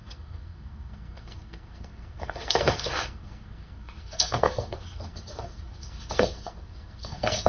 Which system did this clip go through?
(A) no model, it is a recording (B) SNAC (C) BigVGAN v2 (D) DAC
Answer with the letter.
B